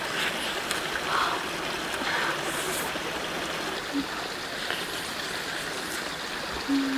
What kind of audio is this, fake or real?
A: real